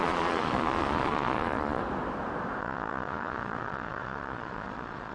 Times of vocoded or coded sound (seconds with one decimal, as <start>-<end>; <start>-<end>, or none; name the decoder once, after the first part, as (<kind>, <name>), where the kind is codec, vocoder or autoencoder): 0.0-1.8 (vocoder, Vocos); 2.6-5.1